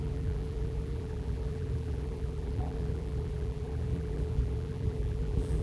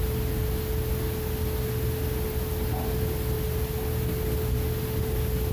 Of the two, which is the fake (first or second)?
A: first